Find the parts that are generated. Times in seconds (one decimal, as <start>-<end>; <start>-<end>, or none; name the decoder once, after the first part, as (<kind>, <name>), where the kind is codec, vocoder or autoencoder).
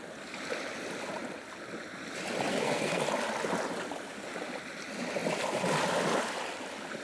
2.5-3.0 (codec, SNAC)